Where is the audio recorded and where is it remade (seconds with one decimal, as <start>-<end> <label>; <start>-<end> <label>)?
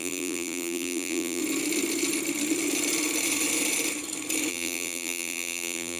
0.0-1.4 remade; 1.4-4.5 recorded; 4.5-6.0 remade